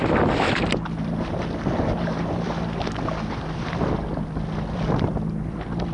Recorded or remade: recorded